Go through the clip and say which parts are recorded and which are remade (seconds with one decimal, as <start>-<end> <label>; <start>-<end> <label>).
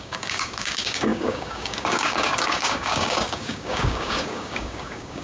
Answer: 0.0-5.2 remade